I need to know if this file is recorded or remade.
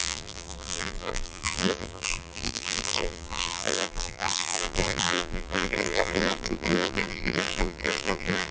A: remade